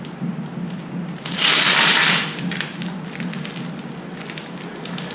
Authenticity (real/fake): real